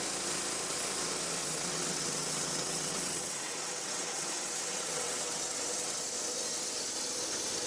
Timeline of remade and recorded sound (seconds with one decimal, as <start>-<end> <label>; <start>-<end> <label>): 0.0-1.4 recorded; 1.4-6.0 remade; 6.0-7.7 recorded